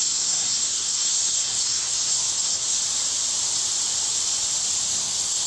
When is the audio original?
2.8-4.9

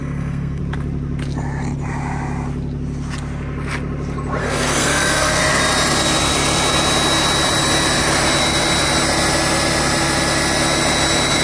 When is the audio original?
0.6-4.4; 5.4-11.4

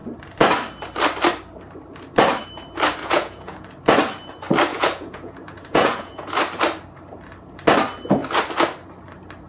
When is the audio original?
0.0-3.0; 3.7-4.7; 6.3-9.5